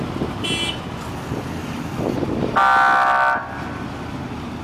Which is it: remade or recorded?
recorded